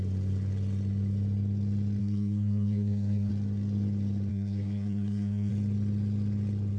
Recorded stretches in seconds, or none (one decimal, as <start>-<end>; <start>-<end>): 0.0-2.0; 3.3-4.3; 5.5-6.8